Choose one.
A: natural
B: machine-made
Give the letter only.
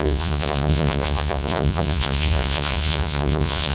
B